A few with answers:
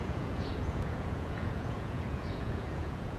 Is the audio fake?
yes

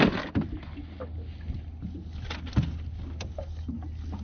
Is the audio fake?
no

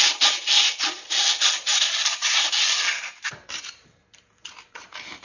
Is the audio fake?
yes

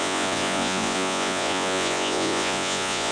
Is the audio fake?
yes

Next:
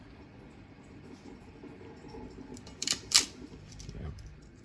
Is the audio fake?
yes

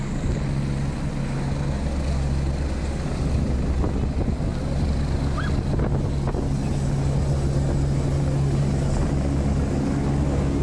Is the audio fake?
no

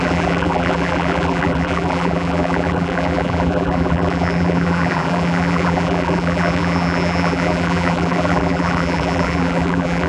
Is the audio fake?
yes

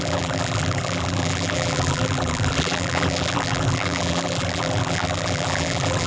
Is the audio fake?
yes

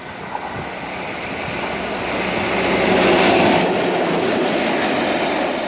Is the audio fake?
no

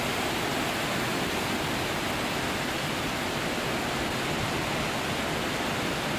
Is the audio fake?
no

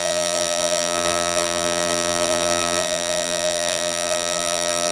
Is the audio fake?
yes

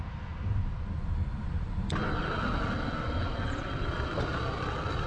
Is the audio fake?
no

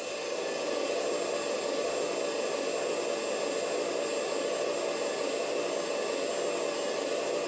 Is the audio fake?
no